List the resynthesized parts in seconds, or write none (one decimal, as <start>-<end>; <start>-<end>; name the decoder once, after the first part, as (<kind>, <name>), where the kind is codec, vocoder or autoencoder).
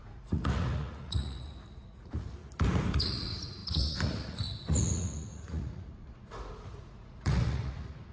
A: 0.0-2.4 (vocoder, Vocos); 2.9-8.1